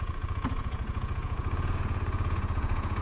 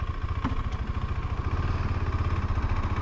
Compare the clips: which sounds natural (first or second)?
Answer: second